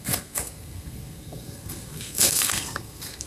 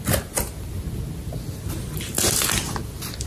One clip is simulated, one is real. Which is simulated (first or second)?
first